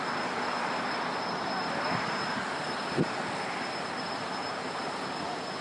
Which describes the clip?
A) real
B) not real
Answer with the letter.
A